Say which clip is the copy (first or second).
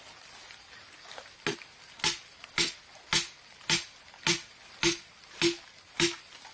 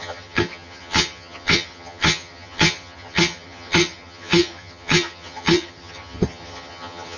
second